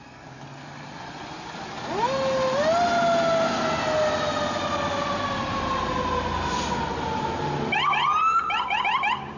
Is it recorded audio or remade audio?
recorded